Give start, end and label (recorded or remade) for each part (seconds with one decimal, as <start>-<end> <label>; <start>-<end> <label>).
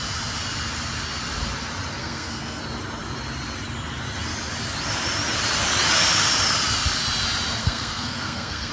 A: 0.0-2.0 recorded; 2.0-2.6 remade; 2.6-7.6 recorded; 7.6-8.7 remade